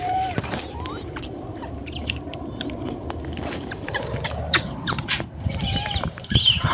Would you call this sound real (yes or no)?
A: no